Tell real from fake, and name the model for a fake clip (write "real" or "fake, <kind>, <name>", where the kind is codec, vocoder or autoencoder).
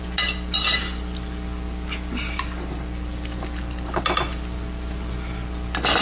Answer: real